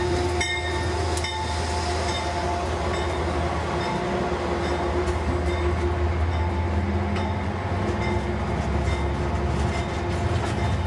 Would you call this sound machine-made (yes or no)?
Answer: no